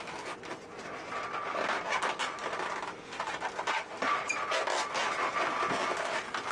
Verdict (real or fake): real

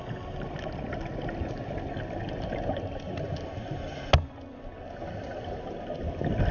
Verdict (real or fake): real